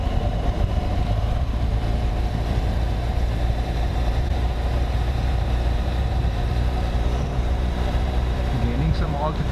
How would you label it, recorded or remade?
remade